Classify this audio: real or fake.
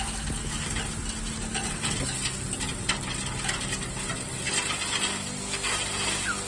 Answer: real